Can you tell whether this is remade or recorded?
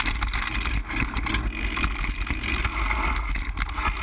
recorded